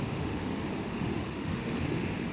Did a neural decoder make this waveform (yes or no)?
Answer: yes